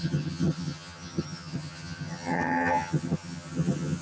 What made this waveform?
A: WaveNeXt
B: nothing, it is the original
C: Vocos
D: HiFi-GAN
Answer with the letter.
D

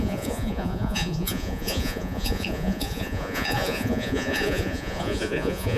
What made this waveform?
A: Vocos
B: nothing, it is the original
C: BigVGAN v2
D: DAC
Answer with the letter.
A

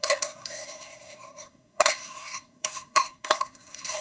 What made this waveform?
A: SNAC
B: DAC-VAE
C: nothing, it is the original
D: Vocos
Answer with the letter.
A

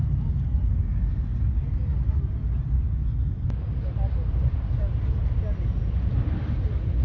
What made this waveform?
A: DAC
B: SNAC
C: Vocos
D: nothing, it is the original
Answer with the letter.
D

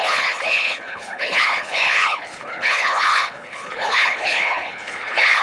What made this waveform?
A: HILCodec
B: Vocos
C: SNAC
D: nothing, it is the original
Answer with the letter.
A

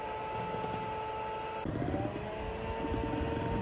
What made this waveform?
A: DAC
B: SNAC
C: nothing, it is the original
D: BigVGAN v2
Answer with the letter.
C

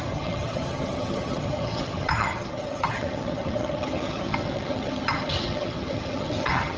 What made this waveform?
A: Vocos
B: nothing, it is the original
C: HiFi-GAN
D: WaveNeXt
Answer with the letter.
C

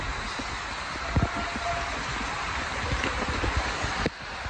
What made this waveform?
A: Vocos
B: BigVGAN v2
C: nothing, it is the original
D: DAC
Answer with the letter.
C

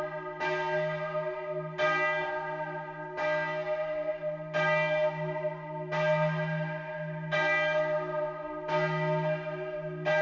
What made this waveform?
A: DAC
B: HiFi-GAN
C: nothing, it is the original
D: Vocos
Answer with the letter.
C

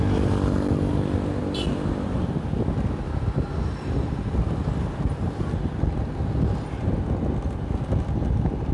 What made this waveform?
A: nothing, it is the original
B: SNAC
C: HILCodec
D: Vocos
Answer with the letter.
A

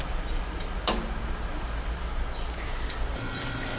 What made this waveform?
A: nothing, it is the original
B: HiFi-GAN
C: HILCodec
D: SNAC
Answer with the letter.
A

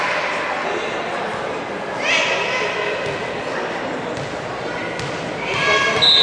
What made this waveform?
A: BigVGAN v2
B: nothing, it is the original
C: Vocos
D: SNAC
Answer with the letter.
B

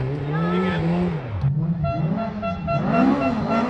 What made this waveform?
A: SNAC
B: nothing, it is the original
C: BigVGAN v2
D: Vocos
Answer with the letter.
B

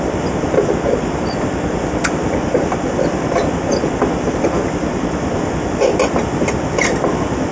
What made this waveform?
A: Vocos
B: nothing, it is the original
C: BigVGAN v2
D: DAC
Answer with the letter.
B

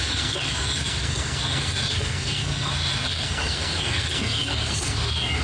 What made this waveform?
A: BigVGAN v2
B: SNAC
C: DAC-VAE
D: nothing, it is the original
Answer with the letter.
B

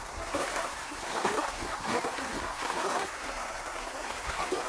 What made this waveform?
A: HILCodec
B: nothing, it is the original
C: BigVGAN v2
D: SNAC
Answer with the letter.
D